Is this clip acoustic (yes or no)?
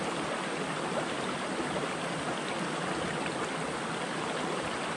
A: yes